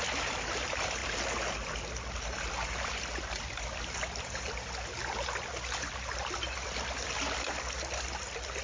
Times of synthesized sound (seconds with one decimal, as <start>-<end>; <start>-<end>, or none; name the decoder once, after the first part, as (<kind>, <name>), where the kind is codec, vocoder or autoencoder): none